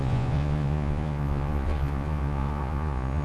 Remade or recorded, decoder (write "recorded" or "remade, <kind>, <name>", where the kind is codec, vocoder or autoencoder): remade, vocoder, Vocos